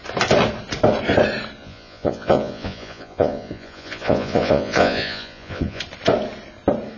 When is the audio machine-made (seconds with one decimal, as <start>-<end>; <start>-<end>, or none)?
1.6-5.8